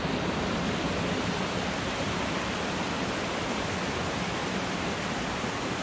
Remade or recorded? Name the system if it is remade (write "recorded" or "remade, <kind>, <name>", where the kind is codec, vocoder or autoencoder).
recorded